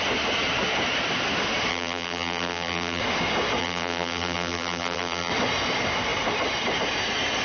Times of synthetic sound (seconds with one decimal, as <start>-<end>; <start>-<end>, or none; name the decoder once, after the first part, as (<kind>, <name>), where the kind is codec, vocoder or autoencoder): 1.7-3.0 (vocoder, BigVGAN v2); 3.6-5.3